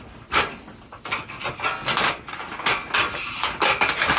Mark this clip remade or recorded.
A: recorded